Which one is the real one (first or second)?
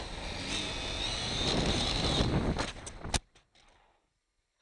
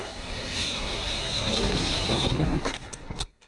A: first